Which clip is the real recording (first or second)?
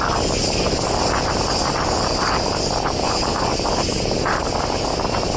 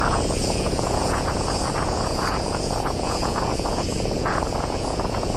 first